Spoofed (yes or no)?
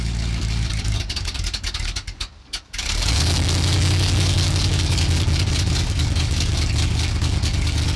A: yes